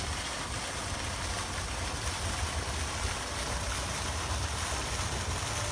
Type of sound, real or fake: real